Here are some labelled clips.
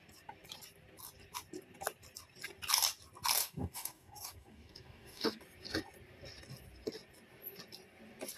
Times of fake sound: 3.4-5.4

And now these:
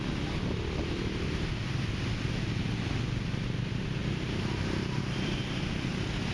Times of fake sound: none

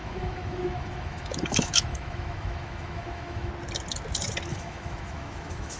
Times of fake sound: 0.0-3.5; 4.5-5.8

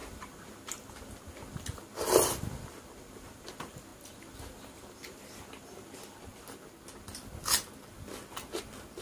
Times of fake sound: none

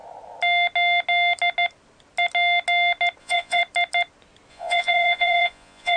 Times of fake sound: 3.2-3.6; 4.5-6.0

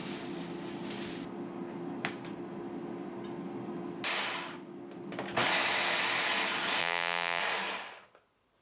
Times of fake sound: 6.8-7.4

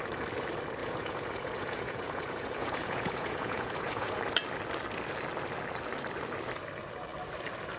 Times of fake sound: 0.8-4.2